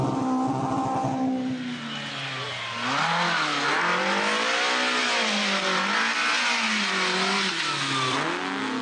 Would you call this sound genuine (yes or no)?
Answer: yes